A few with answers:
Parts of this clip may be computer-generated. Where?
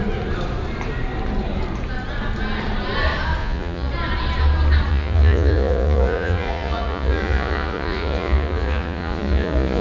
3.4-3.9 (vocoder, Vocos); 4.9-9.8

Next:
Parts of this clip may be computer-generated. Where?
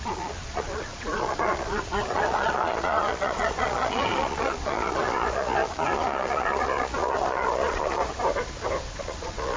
0.0-8.0 (vocoder, Vocos); 9.0-9.6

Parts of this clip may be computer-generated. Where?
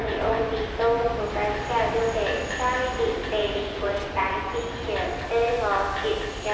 0.0-0.5 (vocoder, Vocos); 3.4-4.6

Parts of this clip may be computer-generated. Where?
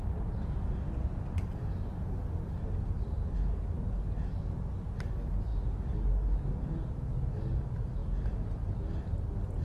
none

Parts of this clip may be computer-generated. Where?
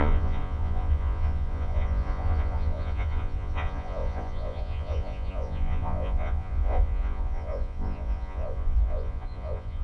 0.0-9.8 (vocoder, Vocos)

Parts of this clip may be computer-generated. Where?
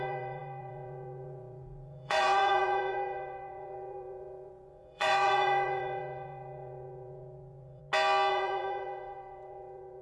0.0-7.8 (vocoder, Vocos); 8.3-10.0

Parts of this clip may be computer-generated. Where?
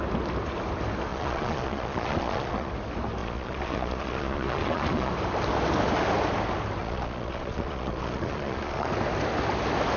1.1-2.7 (vocoder, Vocos); 3.2-5.1; 6.8-8.9